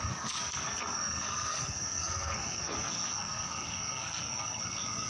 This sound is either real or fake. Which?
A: fake